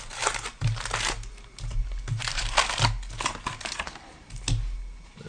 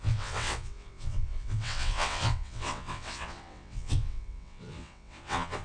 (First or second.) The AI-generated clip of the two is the second